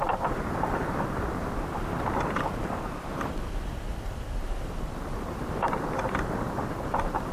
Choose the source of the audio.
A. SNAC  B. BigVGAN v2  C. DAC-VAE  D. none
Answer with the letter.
B